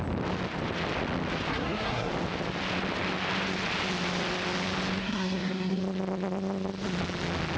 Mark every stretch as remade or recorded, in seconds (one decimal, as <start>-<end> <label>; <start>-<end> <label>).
0.0-1.5 recorded; 1.5-2.1 remade; 2.1-5.0 recorded; 5.0-5.8 remade; 5.8-7.6 recorded